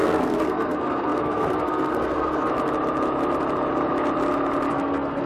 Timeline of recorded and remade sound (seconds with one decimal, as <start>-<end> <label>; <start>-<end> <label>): 0.0-2.5 remade; 2.5-4.7 recorded; 4.7-5.3 remade